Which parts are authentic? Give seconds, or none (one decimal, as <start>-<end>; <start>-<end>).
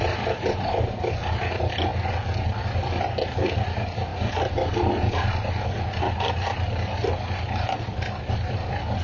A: 1.9-2.6; 4.1-7.8